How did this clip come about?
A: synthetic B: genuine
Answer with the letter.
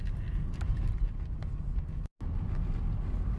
B